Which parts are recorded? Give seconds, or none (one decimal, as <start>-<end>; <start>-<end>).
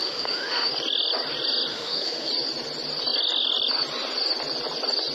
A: 0.7-1.7; 2.3-5.1